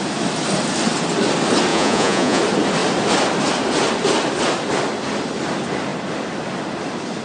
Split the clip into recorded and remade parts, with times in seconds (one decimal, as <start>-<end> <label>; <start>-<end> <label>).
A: 0.0-1.7 recorded; 1.7-2.4 remade; 2.4-7.2 recorded